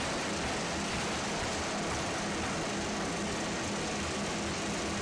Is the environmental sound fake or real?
real